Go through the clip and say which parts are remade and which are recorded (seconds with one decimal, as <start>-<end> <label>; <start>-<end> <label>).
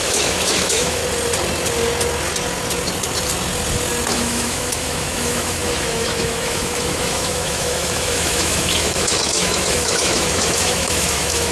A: 0.0-1.0 remade; 1.0-4.1 recorded; 4.1-11.5 remade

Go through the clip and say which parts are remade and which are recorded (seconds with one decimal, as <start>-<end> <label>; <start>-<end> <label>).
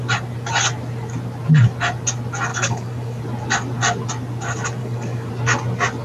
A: 0.0-2.5 recorded; 2.5-3.2 remade; 3.2-4.8 recorded; 4.8-5.3 remade; 5.3-6.0 recorded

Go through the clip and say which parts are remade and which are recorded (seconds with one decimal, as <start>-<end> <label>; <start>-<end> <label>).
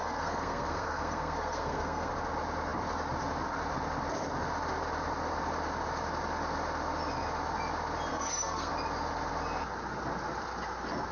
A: 0.0-2.1 remade; 2.1-8.1 recorded; 8.1-8.7 remade; 8.7-11.1 recorded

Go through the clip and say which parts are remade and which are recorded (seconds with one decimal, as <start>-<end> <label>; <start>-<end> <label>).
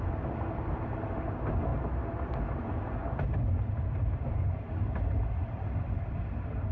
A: 0.0-1.7 recorded; 1.7-2.3 remade; 2.3-6.7 recorded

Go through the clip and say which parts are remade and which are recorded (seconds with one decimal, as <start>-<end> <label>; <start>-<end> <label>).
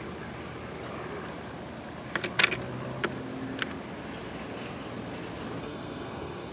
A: 0.0-5.6 recorded; 5.6-6.5 remade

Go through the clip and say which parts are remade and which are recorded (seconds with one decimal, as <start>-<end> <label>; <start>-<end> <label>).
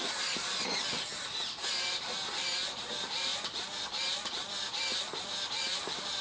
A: 0.0-6.2 recorded